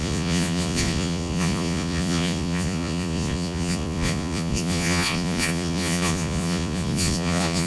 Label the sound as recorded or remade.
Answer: remade